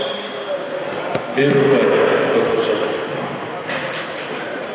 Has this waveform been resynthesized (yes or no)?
no